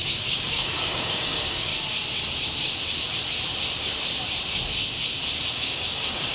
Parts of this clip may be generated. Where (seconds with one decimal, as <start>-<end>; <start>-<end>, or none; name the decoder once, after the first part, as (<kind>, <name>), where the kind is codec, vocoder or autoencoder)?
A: 0.0-1.7 (codec, DAC); 5.5-6.3